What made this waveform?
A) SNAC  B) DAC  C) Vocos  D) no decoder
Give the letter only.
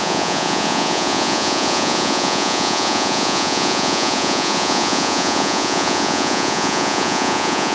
C